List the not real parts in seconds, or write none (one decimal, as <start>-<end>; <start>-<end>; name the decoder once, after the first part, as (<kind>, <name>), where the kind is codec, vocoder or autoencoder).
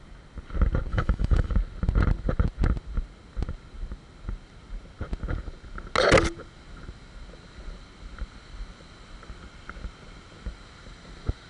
0.9-1.5 (autoencoder, DAC-VAE)